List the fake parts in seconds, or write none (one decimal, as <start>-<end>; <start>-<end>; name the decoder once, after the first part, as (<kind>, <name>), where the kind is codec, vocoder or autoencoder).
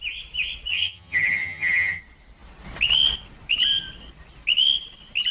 0.7-2.0 (vocoder, HiFi-GAN)